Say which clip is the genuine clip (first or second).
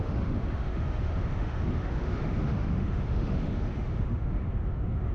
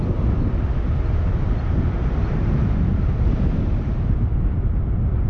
second